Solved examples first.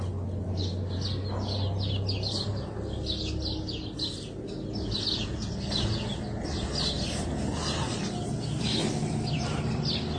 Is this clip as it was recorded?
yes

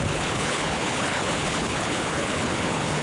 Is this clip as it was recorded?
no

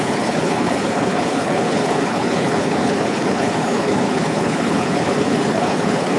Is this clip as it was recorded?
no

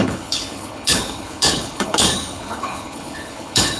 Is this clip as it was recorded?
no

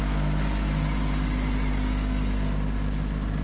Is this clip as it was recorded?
yes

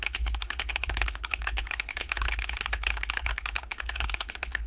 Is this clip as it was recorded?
no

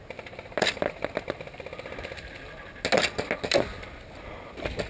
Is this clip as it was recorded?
yes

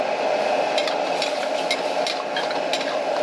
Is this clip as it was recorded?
yes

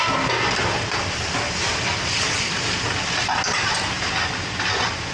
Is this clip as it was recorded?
yes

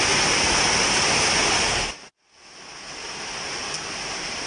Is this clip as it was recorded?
yes